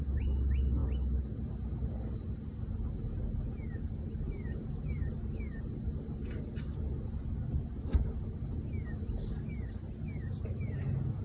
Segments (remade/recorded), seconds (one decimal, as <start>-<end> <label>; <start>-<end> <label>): 0.0-11.2 recorded